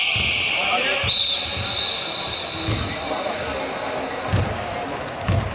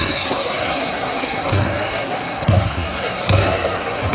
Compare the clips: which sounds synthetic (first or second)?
second